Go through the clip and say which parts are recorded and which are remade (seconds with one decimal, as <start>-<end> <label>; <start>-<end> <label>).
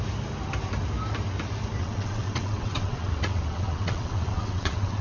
0.0-1.8 recorded; 1.8-5.0 remade